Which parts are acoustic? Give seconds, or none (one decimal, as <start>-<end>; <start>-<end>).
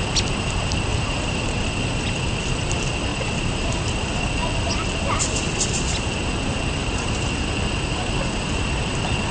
0.0-0.9; 1.7-3.1; 4.2-6.8; 7.5-9.3